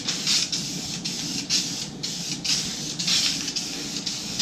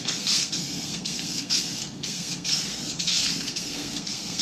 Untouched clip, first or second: first